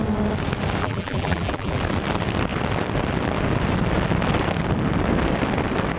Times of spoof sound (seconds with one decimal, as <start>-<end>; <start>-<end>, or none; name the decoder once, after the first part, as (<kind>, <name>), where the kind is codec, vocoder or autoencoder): 0.8-1.8 (vocoder, BigVGAN v2)